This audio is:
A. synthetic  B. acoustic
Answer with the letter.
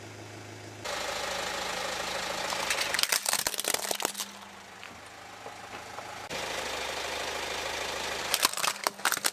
B